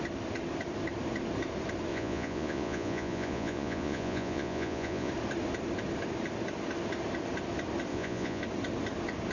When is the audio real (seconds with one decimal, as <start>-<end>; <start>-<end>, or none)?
0.0-1.9; 5.1-7.9; 8.4-9.3